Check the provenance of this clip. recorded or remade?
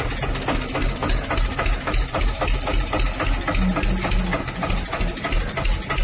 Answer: recorded